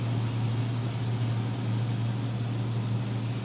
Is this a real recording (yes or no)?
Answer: yes